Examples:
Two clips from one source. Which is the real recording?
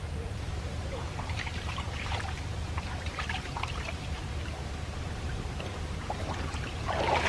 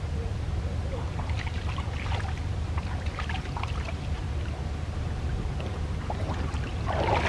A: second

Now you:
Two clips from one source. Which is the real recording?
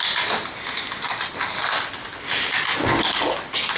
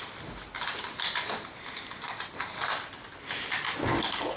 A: first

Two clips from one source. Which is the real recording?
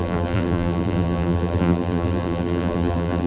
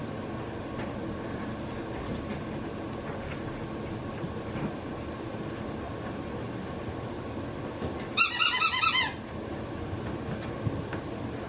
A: second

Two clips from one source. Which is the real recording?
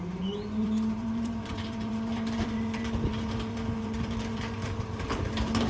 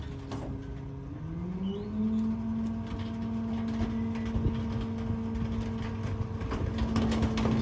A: second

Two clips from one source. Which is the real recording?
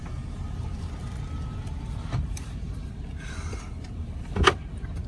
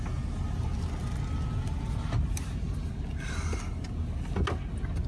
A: second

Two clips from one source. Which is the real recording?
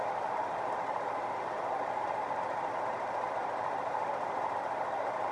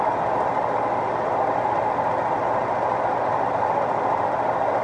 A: second